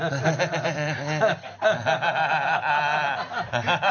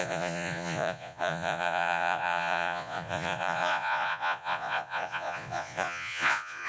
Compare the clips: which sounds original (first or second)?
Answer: first